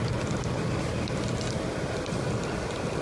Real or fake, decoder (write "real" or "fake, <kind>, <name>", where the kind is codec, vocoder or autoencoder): real